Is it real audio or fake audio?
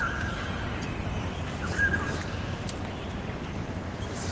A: real